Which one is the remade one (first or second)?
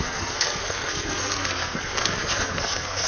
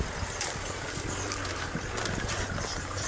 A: first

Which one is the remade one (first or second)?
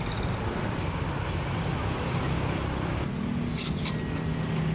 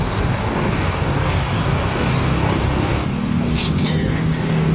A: second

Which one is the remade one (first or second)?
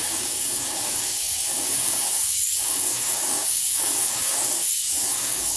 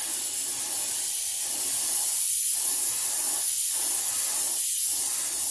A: first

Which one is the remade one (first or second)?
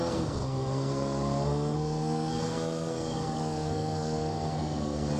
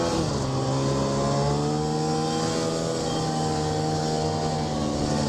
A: first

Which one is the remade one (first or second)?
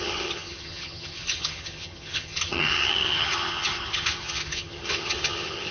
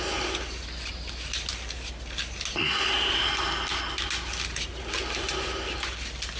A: first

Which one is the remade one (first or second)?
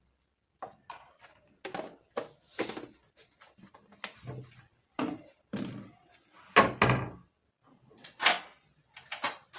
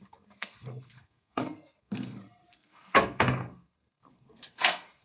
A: second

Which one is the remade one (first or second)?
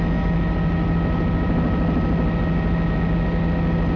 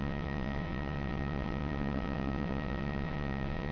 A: second